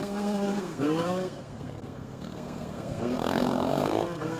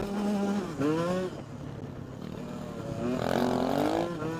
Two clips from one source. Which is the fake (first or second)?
first